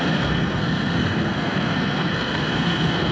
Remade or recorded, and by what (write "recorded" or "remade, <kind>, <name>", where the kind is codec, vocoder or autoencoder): remade, codec, SNAC